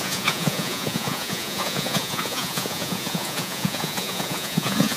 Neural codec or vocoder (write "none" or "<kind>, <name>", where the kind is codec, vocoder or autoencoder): vocoder, Vocos